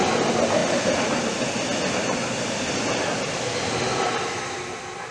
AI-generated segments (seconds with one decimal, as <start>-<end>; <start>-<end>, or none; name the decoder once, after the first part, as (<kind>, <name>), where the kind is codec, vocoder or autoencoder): none